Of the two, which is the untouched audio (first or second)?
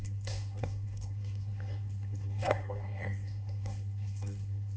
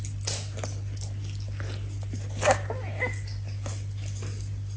second